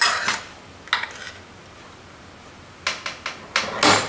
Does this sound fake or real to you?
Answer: real